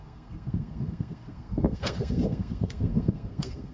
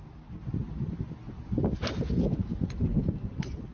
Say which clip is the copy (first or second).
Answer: first